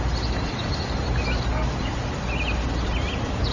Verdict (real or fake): real